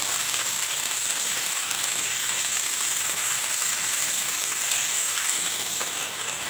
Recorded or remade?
remade